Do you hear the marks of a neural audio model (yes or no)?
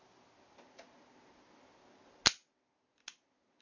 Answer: no